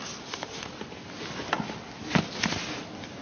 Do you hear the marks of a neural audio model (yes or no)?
no